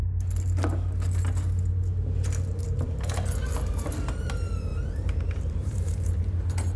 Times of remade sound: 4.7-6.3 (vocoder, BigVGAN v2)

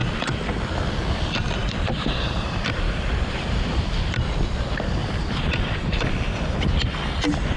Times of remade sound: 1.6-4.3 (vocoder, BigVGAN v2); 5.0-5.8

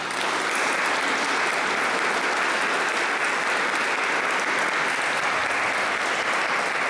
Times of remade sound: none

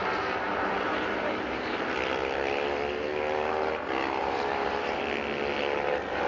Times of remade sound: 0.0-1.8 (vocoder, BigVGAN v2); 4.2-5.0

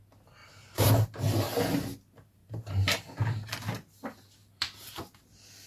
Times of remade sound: 0.4-0.9 (vocoder, BigVGAN v2); 2.4-3.5; 4.4-5.0

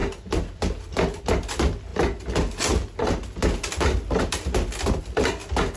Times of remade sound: none